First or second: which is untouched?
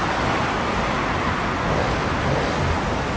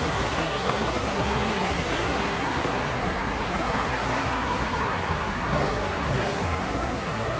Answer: first